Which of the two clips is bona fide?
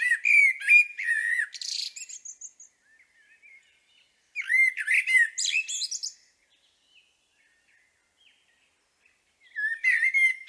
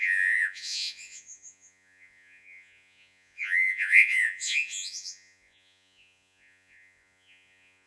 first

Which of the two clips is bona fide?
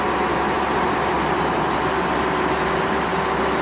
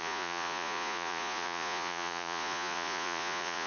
first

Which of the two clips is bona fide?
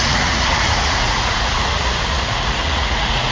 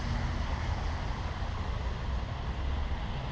second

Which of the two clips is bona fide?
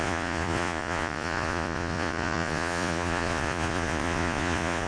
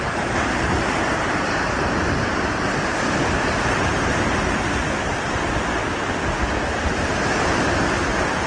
second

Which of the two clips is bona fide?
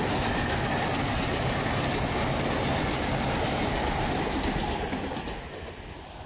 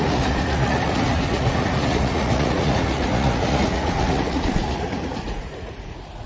first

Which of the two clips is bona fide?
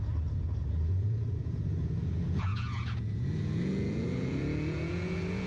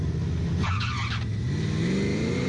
second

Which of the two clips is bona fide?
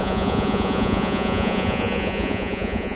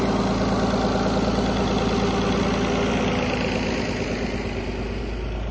second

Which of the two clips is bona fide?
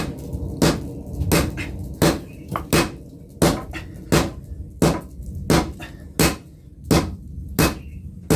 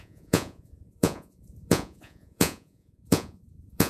first